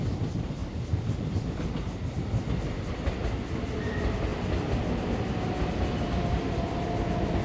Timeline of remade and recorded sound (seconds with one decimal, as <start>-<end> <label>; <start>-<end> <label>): 0.0-7.4 recorded